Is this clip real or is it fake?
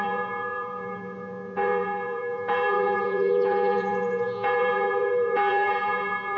fake